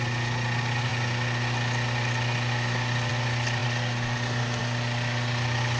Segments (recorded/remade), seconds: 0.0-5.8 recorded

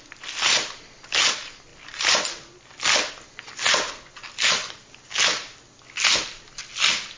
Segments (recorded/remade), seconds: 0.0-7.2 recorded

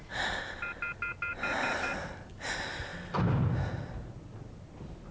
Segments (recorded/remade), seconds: 0.0-5.1 recorded

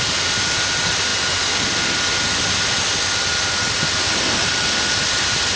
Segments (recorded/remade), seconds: 0.0-5.6 recorded